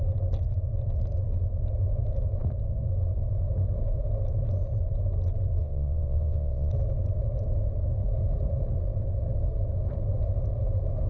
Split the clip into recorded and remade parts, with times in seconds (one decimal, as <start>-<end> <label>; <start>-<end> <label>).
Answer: 0.0-5.6 recorded; 5.6-6.7 remade; 6.7-11.1 recorded